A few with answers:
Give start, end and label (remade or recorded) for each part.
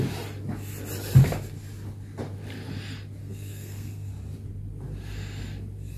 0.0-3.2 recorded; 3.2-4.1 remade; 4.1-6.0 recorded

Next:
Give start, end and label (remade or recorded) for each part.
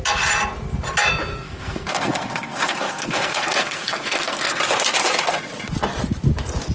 0.0-1.3 recorded; 1.3-4.6 remade; 4.6-6.7 recorded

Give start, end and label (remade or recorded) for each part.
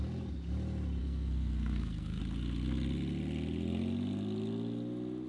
0.0-1.0 recorded; 1.0-2.2 remade; 2.2-5.3 recorded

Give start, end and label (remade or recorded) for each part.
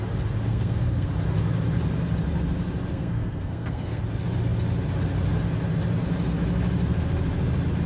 0.0-0.5 recorded; 0.5-1.1 remade; 1.1-2.9 recorded; 2.9-4.0 remade; 4.0-7.9 recorded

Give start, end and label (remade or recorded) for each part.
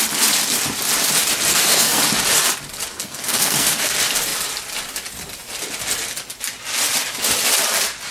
0.0-1.5 recorded; 1.5-2.0 remade; 2.0-2.9 recorded; 2.9-3.9 remade; 3.9-8.1 recorded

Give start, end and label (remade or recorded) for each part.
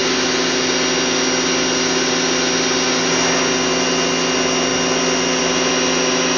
0.0-6.4 recorded